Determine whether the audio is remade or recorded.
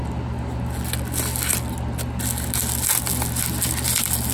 recorded